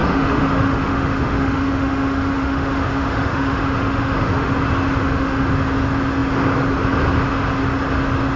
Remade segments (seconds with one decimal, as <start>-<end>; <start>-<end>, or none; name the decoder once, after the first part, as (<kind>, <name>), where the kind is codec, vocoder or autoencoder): 0.0-4.5 (autoencoder, DAC-VAE); 5.0-5.5